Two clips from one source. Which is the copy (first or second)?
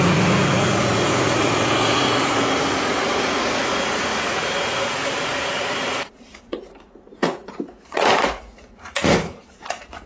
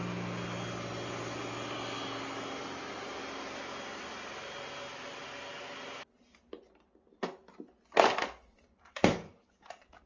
first